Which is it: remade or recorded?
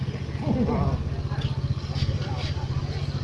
recorded